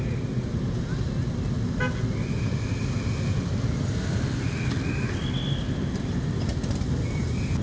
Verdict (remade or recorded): recorded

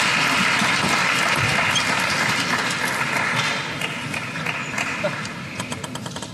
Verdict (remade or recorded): recorded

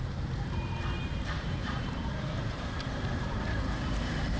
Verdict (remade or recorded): remade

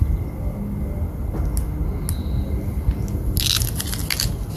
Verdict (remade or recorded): recorded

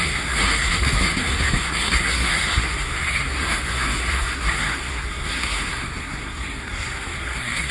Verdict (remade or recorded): remade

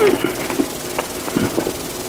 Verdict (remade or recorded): recorded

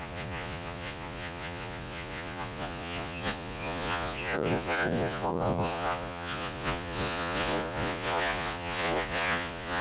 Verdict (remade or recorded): remade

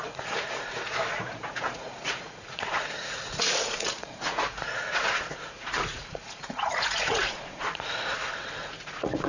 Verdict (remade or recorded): remade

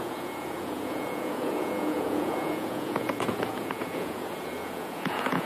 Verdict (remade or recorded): remade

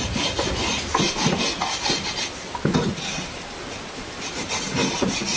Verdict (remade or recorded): recorded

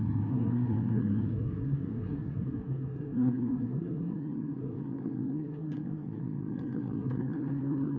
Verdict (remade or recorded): remade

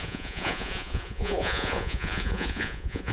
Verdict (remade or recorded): remade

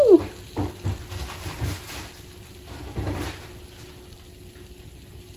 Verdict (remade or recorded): recorded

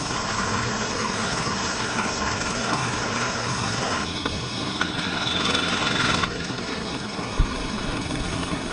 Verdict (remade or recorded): remade